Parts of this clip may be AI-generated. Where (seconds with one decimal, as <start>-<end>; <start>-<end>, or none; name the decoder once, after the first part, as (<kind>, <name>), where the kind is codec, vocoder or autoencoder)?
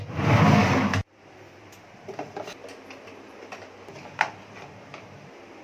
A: none